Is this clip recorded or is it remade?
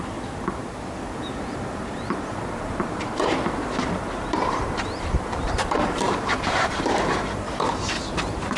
remade